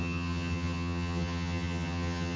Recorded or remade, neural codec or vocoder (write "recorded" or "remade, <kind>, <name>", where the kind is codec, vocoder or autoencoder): remade, vocoder, HiFi-GAN